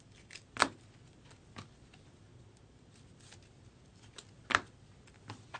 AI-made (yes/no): no